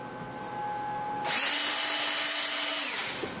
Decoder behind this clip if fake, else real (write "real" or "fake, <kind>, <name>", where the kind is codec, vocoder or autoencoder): real